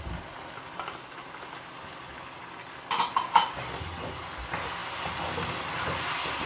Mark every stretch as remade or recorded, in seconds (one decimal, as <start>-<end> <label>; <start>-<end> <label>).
0.0-6.5 recorded